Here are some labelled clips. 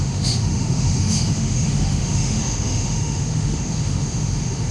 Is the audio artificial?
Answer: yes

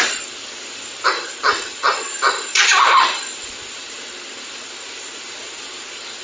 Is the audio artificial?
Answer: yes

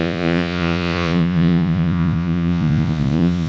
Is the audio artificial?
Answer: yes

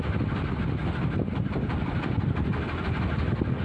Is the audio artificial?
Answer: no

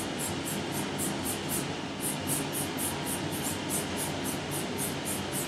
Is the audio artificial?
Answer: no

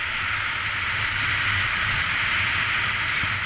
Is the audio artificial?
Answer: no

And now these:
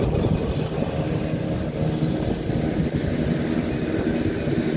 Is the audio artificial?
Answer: no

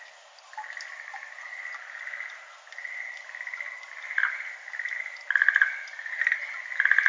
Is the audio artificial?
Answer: no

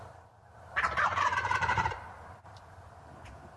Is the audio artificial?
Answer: yes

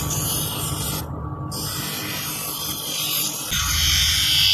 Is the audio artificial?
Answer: no